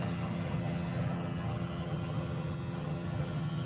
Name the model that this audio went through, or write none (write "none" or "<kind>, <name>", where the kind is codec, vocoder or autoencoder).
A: vocoder, HiFi-GAN